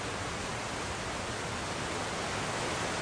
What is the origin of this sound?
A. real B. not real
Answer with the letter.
A